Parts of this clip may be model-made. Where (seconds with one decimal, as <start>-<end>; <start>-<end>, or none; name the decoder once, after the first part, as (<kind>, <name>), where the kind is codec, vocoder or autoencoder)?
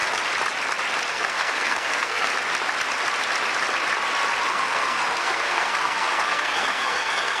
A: 1.1-2.3 (codec, SNAC); 4.5-7.4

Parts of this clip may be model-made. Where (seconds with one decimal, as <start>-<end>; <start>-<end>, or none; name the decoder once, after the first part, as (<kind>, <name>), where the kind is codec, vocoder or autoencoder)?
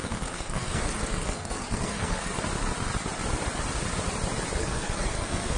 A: 0.0-2.4 (codec, SNAC); 4.6-5.6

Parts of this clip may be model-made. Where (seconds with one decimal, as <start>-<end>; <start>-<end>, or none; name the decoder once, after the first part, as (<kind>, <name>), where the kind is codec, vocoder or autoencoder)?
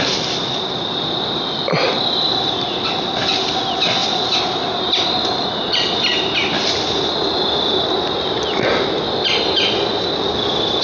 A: none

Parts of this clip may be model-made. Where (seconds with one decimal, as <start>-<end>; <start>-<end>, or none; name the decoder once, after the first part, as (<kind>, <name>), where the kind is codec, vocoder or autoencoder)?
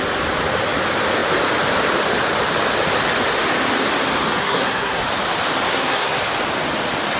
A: 4.4-5.0 (codec, SNAC); 5.7-6.2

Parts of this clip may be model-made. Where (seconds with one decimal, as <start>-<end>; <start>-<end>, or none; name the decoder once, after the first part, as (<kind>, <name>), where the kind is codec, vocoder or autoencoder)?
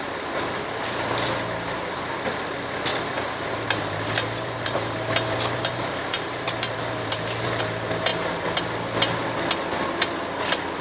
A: 2.9-7.6 (vocoder, BigVGAN v2)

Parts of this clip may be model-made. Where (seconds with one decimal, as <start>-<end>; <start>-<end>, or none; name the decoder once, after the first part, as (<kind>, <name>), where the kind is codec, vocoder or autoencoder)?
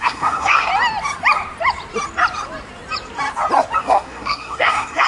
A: 0.0-0.7 (codec, SNAC); 3.8-5.1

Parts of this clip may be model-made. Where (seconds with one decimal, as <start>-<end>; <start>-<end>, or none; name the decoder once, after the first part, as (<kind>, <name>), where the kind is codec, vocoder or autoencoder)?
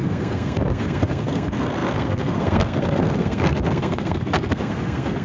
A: 0.0-5.2 (codec, SNAC)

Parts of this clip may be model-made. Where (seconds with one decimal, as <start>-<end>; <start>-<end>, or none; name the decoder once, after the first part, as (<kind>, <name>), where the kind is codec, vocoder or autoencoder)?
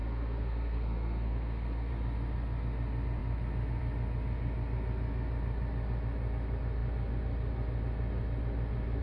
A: 0.0-1.9 (codec, SNAC)